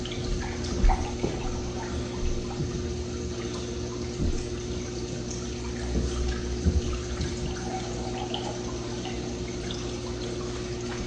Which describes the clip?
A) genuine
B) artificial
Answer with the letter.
A